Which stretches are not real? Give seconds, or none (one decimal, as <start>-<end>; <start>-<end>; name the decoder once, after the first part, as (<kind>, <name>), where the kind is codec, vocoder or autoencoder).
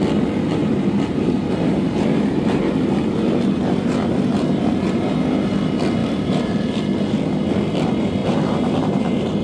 0.6-5.0 (vocoder, BigVGAN v2); 6.0-6.5; 8.2-9.4